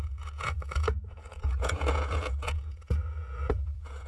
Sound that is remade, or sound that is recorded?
remade